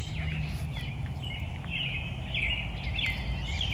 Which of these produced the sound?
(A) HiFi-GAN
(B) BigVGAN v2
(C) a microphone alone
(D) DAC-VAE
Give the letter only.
C